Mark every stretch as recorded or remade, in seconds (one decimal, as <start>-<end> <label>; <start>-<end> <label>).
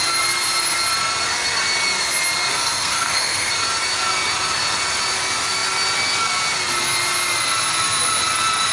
0.0-2.5 recorded; 2.5-3.5 remade; 3.5-8.7 recorded